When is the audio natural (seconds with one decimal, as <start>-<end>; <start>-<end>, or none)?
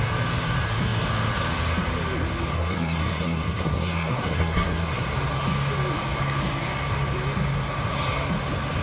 0.0-2.5; 5.0-8.8